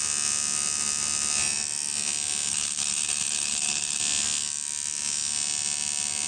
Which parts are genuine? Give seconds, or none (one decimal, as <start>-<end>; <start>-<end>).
0.0-2.5; 4.0-6.3